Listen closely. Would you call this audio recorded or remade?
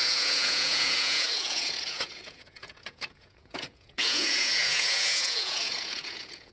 remade